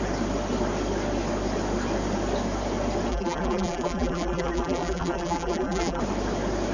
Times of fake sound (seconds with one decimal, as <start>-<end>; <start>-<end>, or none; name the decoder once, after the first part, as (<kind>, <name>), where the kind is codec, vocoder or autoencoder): 3.1-6.0 (vocoder, BigVGAN v2)